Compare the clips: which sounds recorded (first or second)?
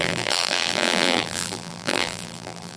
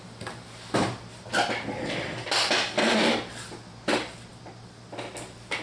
second